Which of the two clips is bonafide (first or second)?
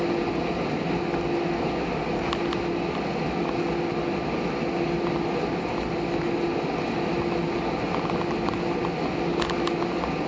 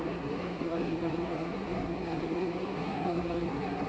first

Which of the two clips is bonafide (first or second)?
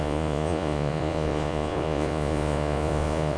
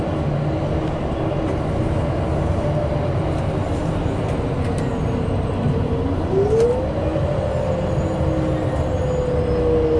second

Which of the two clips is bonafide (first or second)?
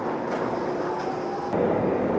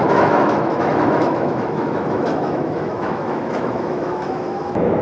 first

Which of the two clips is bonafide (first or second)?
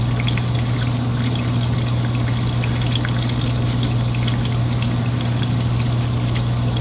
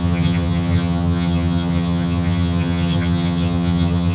first